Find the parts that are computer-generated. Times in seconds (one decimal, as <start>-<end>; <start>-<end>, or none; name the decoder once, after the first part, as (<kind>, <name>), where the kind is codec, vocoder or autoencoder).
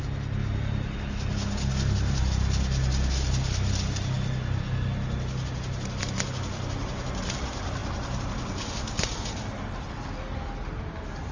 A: none